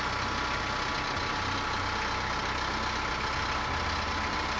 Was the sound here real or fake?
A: real